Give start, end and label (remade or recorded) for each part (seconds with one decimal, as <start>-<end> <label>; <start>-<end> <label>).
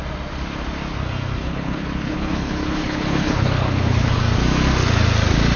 0.0-1.4 recorded; 1.4-4.2 remade; 4.2-5.6 recorded